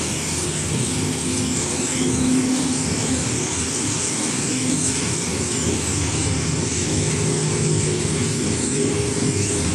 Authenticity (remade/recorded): remade